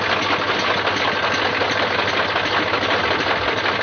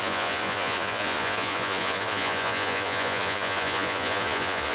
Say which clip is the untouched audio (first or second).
first